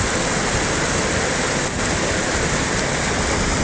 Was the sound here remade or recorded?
recorded